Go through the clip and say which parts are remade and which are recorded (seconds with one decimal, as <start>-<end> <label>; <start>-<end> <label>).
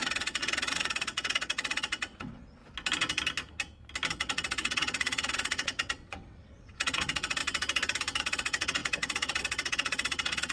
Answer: 0.0-2.6 remade; 2.6-4.1 recorded; 4.1-7.4 remade; 7.4-8.2 recorded; 8.2-10.5 remade